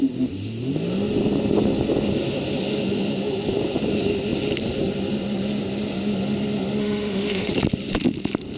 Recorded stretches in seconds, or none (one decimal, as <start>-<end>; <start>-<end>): 0.0-6.8; 7.5-8.6